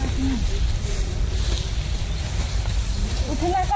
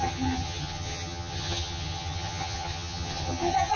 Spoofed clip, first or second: second